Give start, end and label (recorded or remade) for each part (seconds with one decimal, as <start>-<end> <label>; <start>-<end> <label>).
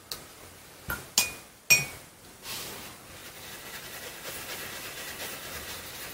0.0-6.1 recorded